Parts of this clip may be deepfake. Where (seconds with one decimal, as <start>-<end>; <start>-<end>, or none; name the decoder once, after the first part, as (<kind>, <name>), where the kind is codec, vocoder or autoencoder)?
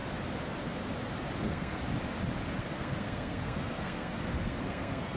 1.4-1.8 (codec, SNAC); 2.6-5.2